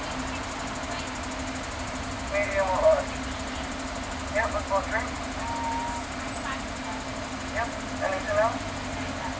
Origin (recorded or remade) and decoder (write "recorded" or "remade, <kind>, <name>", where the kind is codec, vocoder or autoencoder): recorded